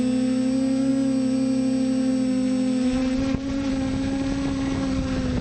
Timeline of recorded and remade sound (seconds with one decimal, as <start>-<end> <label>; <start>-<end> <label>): 0.0-3.0 recorded; 3.0-3.7 remade; 3.7-5.4 recorded